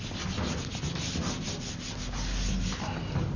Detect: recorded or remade recorded